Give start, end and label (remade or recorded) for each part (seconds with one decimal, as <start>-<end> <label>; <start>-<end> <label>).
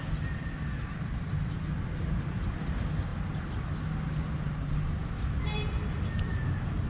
0.0-6.9 recorded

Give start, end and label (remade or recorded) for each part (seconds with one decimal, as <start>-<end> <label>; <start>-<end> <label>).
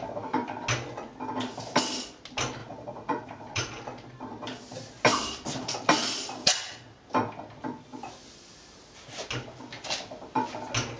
0.0-2.6 recorded; 2.6-3.8 remade; 3.8-6.4 recorded; 6.4-7.0 remade; 7.0-11.0 recorded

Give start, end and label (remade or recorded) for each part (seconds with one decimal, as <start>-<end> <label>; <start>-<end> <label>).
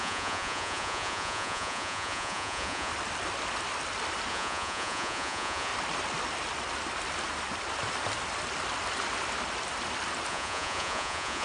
0.0-2.9 remade; 2.9-4.3 recorded; 4.3-5.7 remade; 5.7-10.3 recorded; 10.3-11.4 remade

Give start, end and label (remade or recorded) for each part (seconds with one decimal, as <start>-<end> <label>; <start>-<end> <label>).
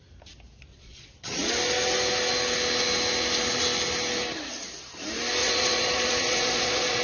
0.0-0.7 recorded; 0.7-1.5 remade; 1.5-5.4 recorded; 5.4-7.0 remade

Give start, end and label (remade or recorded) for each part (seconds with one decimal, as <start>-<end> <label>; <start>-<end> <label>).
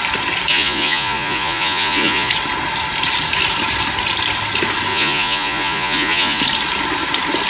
0.0-0.5 recorded; 0.5-2.3 remade; 2.3-4.9 recorded; 4.9-6.4 remade; 6.4-7.5 recorded